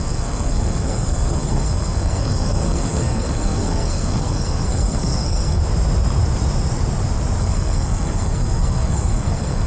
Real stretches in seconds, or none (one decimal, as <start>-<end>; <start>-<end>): 5.6-7.4